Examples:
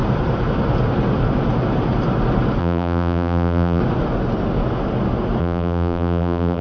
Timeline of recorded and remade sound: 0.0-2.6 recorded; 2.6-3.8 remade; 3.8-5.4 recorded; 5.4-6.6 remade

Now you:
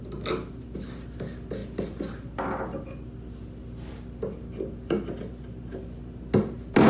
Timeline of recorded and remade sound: 0.0-6.9 recorded